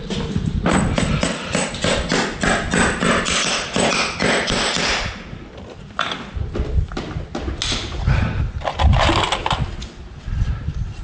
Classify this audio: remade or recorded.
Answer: recorded